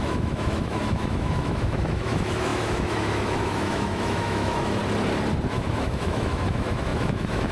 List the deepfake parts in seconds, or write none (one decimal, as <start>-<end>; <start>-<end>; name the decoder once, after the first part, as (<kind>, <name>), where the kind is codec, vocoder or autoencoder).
0.0-4.8 (autoencoder, DAC-VAE); 5.5-7.5